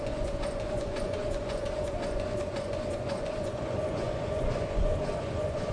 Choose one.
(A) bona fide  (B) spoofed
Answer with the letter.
B